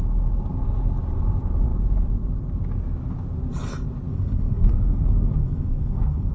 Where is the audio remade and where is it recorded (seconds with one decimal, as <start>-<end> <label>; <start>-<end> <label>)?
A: 0.0-4.1 recorded; 4.1-6.3 remade